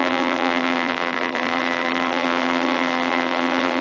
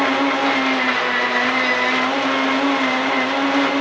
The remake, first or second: first